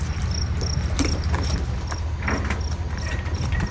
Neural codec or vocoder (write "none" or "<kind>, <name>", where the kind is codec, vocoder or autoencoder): none